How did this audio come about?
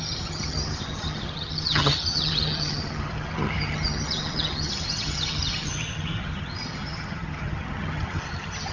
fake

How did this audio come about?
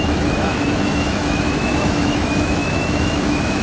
fake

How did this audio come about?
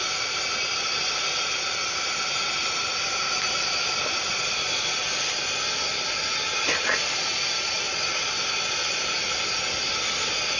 real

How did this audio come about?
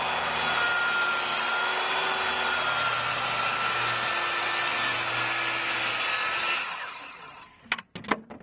real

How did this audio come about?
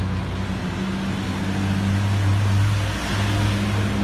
real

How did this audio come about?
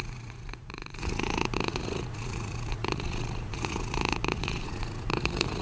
fake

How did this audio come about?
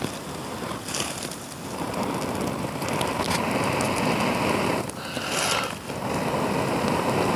real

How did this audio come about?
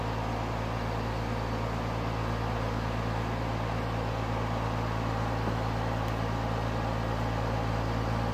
real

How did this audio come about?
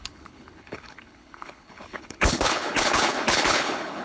fake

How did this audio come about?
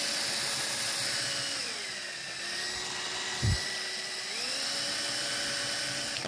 real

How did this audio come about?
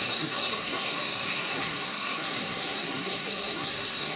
fake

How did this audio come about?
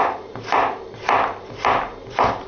fake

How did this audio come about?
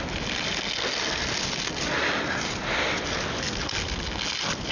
real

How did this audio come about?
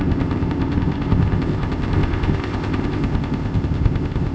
fake